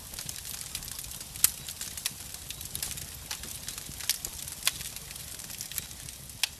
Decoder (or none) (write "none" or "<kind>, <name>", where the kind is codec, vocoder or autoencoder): none